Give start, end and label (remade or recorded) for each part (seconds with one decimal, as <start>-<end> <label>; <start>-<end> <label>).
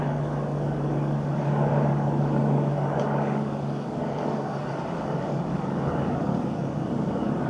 0.0-7.5 remade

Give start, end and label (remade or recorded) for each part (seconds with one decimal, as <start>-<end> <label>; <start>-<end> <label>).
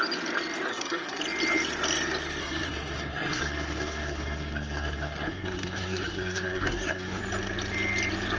0.0-0.7 recorded; 0.7-1.2 remade; 1.2-2.4 recorded; 2.4-7.2 remade; 7.2-8.4 recorded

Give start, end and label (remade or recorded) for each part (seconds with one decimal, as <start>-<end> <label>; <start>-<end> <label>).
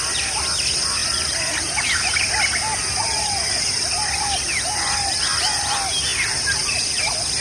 0.0-7.4 recorded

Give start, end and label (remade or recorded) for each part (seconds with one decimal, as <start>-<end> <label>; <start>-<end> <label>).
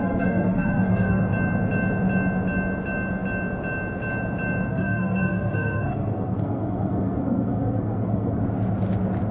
0.0-1.2 remade; 1.2-4.7 recorded; 4.7-8.4 remade; 8.4-9.3 recorded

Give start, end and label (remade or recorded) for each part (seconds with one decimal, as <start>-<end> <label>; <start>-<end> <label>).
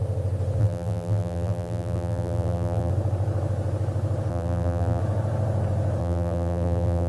0.0-0.6 recorded; 0.6-2.9 remade; 2.9-4.3 recorded; 4.3-5.0 remade; 5.0-6.0 recorded; 6.0-7.1 remade